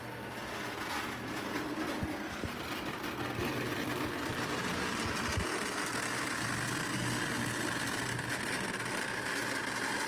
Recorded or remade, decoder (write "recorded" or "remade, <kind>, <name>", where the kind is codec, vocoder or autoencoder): recorded